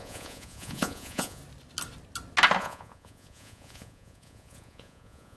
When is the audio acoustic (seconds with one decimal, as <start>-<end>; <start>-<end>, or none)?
1.4-2.6